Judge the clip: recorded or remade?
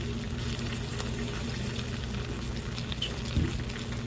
recorded